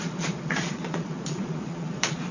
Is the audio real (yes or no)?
no